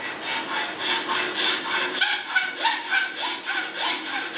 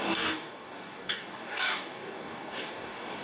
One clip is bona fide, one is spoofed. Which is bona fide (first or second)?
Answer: first